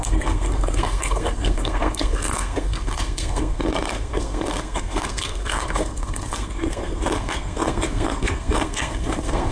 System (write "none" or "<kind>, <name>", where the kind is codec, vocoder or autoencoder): codec, SNAC